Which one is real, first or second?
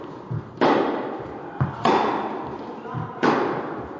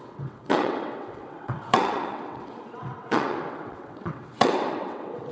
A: first